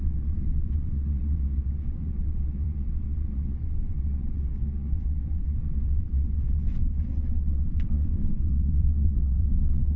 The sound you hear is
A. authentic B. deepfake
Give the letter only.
B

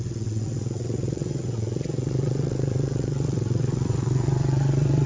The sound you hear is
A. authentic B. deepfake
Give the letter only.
B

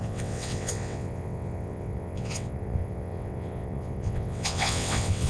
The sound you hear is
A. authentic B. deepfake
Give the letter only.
B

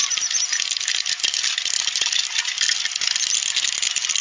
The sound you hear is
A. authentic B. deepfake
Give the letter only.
A